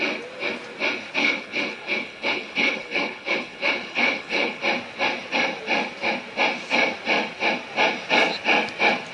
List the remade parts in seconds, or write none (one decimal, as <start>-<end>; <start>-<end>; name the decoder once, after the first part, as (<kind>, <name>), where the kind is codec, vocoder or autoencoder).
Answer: 1.2-4.6 (codec, HILCodec)